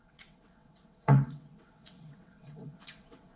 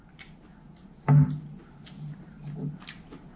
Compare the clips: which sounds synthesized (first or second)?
first